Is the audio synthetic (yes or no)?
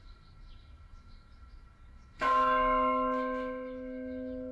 yes